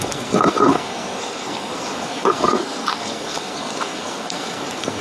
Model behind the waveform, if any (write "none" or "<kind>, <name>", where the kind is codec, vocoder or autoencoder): codec, SNAC